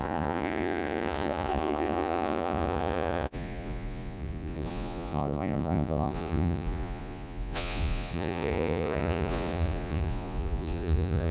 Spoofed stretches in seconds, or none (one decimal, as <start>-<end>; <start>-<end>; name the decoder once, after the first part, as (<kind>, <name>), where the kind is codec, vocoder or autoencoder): 0.0-11.3 (vocoder, Vocos)